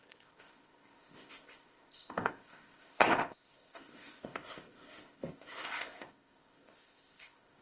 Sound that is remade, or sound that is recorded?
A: remade